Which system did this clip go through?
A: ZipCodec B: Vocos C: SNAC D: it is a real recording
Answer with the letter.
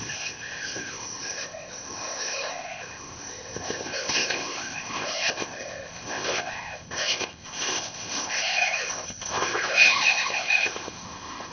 A